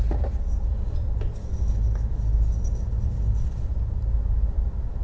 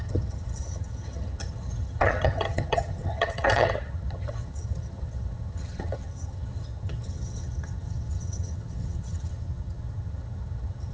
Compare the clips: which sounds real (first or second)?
first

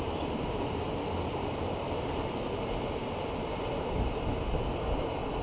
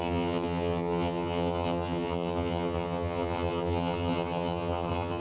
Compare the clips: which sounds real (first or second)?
first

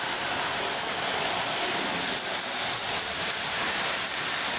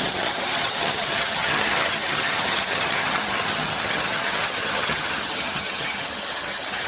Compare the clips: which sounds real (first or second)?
first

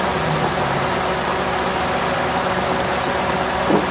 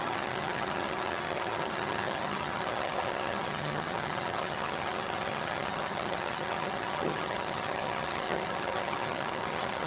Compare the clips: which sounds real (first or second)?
first